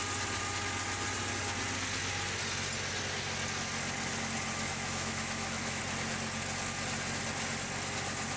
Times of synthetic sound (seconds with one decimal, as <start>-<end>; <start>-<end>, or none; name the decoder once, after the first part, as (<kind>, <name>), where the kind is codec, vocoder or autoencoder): 4.7-5.8 (autoencoder, DAC-VAE)